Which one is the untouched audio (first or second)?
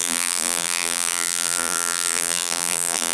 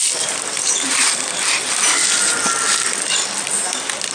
second